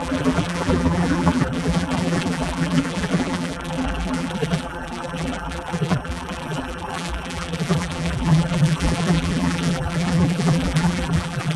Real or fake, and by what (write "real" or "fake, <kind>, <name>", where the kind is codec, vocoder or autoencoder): fake, vocoder, BigVGAN v2